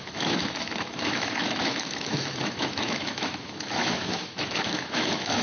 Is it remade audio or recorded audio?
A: remade